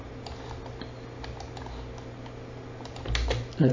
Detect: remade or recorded recorded